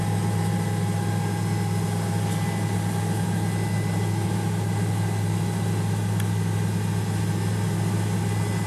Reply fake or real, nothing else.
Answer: real